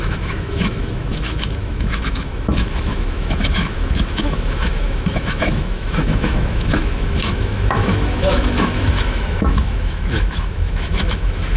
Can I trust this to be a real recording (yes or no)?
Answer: no